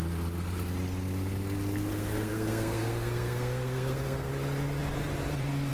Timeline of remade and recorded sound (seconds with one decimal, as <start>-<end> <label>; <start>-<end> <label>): 0.0-1.9 recorded; 1.9-4.3 remade; 4.3-5.7 recorded